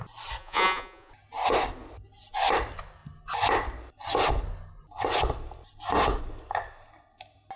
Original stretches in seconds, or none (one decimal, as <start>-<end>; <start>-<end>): 0.0-0.4; 1.1-7.6